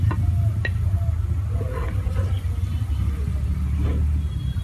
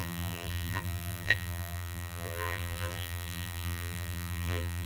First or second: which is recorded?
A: first